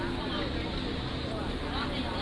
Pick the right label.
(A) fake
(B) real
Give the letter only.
B